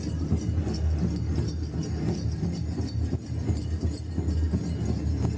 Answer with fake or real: real